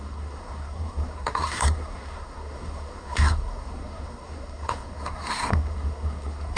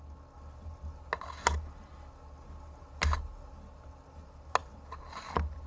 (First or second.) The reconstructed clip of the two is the first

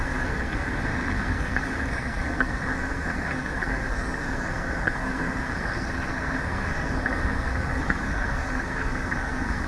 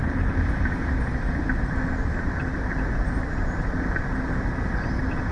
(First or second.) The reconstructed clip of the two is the first